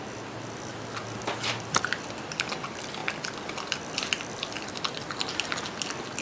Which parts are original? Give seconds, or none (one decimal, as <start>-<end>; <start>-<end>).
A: 0.0-6.2